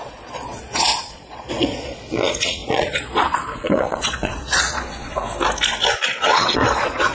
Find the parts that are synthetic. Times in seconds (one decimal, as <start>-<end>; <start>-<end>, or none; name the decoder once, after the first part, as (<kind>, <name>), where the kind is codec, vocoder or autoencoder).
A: 0.0-5.2 (vocoder, Vocos); 6.0-7.1